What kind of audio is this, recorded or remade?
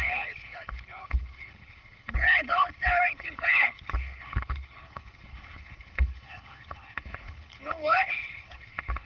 remade